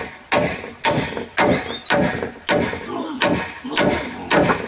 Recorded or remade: recorded